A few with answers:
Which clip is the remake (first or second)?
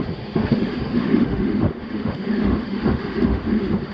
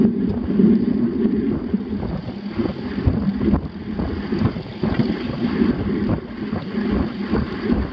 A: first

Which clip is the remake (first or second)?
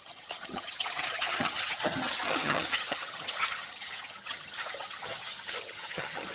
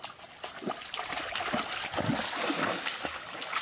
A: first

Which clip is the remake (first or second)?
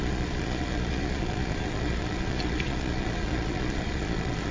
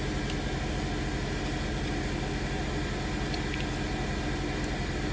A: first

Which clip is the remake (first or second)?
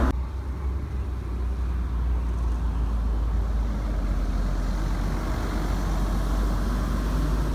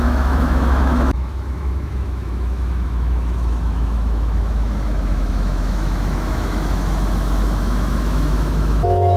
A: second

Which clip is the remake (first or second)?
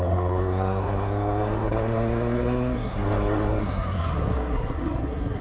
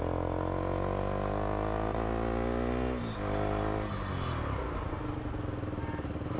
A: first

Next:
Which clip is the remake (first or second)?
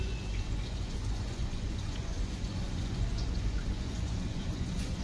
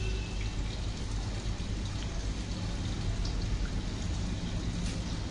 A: first